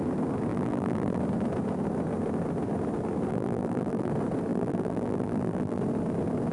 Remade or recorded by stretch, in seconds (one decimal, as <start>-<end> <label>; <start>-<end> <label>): 0.0-0.5 recorded; 0.5-1.2 remade; 1.2-3.3 recorded; 3.3-4.1 remade; 4.1-4.5 recorded; 4.5-5.8 remade; 5.8-6.5 recorded